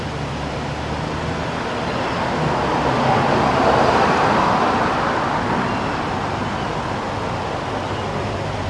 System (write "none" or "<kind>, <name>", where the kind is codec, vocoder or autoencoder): none